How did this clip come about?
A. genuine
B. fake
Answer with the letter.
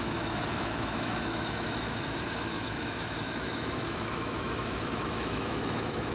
B